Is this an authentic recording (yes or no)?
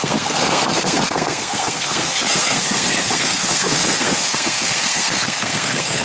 no